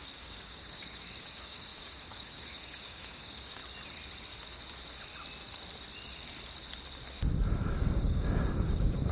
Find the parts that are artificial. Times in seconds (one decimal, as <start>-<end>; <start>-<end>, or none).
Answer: 0.0-3.6; 7.6-9.1